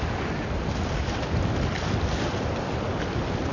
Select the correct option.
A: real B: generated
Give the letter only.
A